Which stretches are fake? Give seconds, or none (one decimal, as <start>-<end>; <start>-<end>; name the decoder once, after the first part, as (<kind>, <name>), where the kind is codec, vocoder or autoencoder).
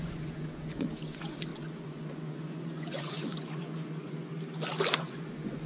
0.0-4.3 (vocoder, Vocos); 5.0-5.7